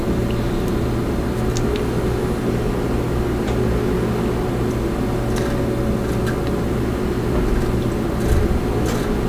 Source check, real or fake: real